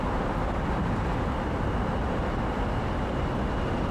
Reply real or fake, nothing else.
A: real